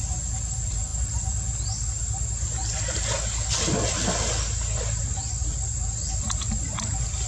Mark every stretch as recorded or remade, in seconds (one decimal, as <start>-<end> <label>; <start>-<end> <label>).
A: 0.0-7.3 recorded

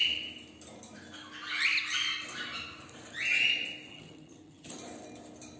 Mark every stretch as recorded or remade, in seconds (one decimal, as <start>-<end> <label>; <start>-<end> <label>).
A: 0.0-3.9 recorded; 3.9-4.7 remade; 4.7-5.6 recorded

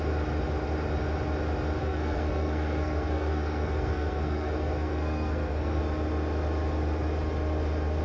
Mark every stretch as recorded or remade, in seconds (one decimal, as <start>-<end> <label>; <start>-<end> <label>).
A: 0.0-1.8 recorded; 1.8-5.8 remade; 5.8-8.0 recorded

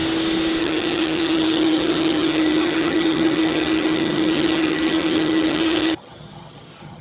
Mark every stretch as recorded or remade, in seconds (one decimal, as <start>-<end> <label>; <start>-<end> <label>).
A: 0.0-0.6 recorded; 0.6-7.0 remade

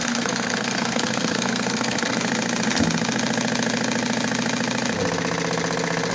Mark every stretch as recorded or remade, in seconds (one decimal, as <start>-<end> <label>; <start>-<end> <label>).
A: 0.0-2.2 remade; 2.2-6.1 recorded

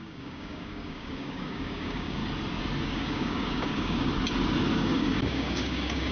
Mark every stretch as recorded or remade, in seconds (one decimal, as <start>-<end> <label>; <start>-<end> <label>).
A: 0.0-2.2 remade; 2.2-2.8 recorded; 2.8-4.1 remade; 4.1-4.7 recorded; 4.7-6.1 remade